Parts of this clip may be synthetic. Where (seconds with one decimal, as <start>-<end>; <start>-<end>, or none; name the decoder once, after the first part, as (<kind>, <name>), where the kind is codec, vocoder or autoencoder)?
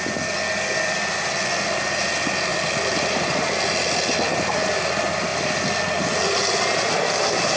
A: none